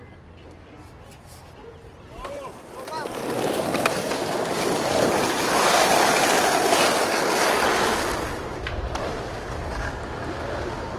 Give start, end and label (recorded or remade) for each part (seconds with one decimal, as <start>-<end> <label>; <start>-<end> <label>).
0.0-1.6 recorded; 1.6-6.7 remade; 6.7-8.4 recorded; 8.4-9.7 remade; 9.7-11.0 recorded